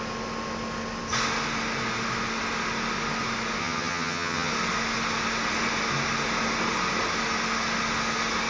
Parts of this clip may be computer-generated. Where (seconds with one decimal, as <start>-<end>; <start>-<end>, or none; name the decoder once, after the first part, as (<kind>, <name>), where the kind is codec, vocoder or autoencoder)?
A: 3.6-4.5 (vocoder, HiFi-GAN)